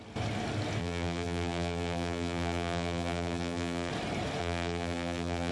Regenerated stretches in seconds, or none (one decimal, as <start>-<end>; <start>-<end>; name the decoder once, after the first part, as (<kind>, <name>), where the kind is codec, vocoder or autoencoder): 0.8-3.9 (vocoder, BigVGAN v2); 4.4-5.5